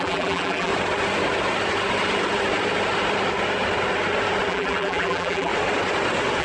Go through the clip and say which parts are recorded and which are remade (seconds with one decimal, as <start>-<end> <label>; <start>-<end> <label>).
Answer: 0.0-0.7 remade; 0.7-4.5 recorded; 4.5-5.5 remade; 5.5-6.4 recorded